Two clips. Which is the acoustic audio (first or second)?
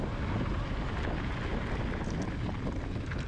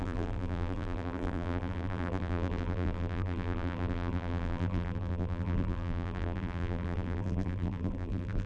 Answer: first